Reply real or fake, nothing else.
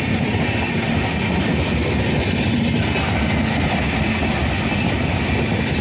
real